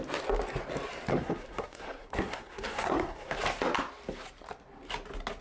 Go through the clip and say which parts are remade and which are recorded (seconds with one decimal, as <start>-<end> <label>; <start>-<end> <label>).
0.0-1.1 recorded; 1.1-3.3 remade; 3.3-5.4 recorded